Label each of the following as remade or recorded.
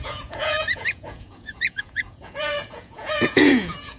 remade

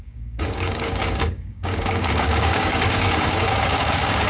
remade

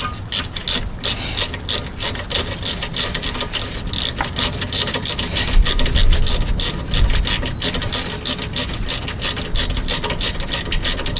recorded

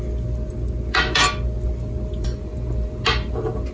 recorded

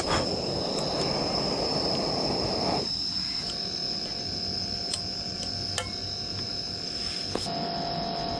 recorded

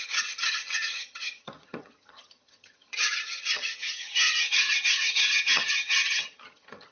remade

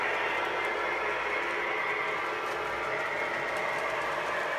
recorded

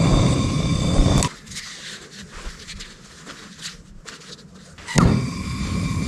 recorded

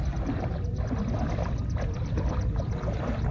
recorded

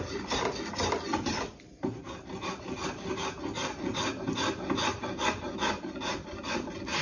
recorded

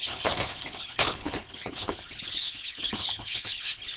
remade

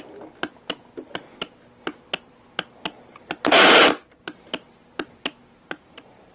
recorded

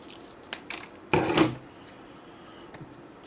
recorded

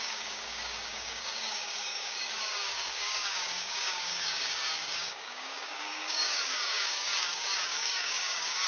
remade